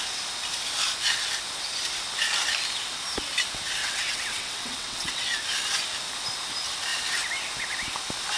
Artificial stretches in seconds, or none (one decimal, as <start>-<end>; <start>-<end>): 3.8-5.4